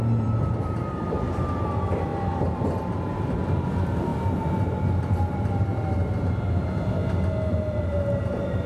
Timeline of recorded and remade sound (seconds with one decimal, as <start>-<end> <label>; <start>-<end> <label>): 0.0-4.1 remade; 4.1-4.9 recorded; 4.9-5.7 remade; 5.7-7.5 recorded; 7.5-8.7 remade